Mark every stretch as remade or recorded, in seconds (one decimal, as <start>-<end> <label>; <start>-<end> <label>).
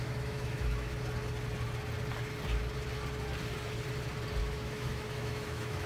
0.0-0.9 remade; 0.9-4.4 recorded; 4.4-5.9 remade